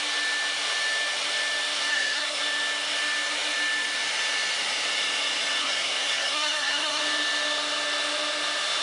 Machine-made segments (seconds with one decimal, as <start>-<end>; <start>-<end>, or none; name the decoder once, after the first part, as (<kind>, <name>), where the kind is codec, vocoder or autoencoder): 1.9-2.4 (codec, SNAC); 5.6-7.0